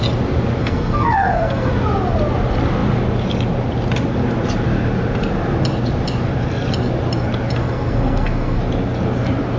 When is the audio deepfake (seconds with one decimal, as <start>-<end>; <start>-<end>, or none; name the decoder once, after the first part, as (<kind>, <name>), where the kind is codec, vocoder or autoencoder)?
0.6-1.7 (codec, SNAC); 7.6-8.6

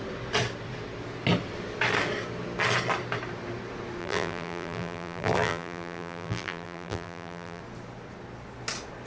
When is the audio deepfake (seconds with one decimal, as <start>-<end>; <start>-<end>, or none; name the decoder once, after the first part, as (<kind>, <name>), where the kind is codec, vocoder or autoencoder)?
4.0-7.6 (vocoder, BigVGAN v2)

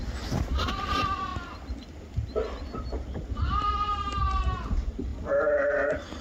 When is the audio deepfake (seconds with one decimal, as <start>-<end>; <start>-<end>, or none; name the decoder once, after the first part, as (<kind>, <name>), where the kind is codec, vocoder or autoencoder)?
none

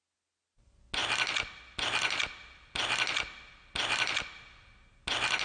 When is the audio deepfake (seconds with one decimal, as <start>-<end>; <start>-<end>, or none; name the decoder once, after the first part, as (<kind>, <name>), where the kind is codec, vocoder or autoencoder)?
none

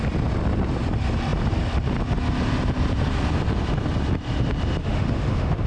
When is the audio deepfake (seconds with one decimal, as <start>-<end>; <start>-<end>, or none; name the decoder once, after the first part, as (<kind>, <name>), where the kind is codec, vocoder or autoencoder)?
4.8-5.7 (autoencoder, DAC-VAE)

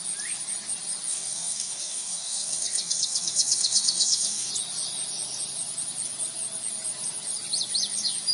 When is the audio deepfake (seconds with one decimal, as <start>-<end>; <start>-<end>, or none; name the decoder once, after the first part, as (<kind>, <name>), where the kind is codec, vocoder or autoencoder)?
1.1-4.5 (codec, DAC)

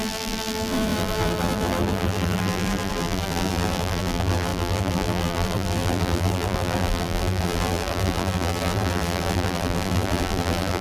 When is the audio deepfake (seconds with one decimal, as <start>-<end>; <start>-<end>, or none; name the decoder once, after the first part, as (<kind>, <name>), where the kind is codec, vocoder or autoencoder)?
0.0-10.8 (vocoder, BigVGAN v2)